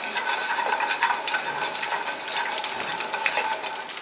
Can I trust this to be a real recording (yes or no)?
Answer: yes